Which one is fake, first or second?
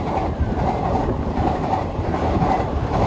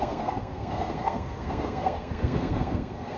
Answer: second